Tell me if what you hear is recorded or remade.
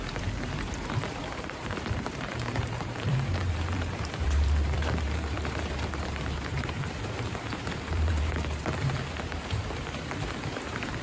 remade